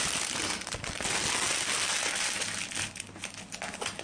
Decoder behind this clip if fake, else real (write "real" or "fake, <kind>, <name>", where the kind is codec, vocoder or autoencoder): real